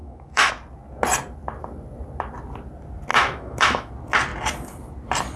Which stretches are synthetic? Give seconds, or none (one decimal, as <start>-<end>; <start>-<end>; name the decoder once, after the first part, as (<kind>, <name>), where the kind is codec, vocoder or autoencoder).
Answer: 0.0-0.5 (autoencoder, DAC-VAE); 3.1-3.9